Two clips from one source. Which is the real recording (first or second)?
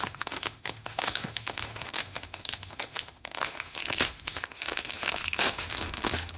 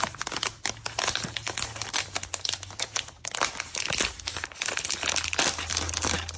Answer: second